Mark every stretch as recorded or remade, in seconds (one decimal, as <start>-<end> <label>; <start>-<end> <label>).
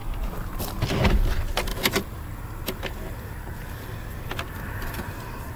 0.0-1.7 recorded; 1.7-5.1 remade; 5.1-5.6 recorded